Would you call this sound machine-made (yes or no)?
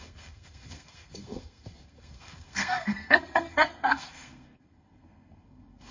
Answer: yes